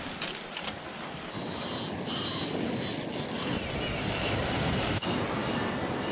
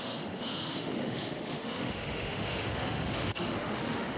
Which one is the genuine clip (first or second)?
first